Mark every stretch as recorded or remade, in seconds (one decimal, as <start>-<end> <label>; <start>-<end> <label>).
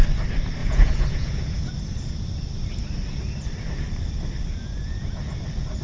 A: 0.0-0.6 recorded; 0.6-1.7 remade; 1.7-4.5 recorded; 4.5-5.2 remade; 5.2-5.8 recorded